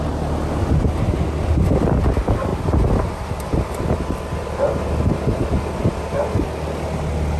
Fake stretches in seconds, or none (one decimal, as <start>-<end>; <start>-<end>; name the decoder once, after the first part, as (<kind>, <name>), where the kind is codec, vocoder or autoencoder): none